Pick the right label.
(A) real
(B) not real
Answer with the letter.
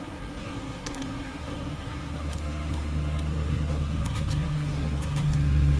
B